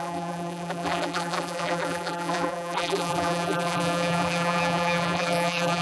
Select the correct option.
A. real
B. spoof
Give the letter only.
B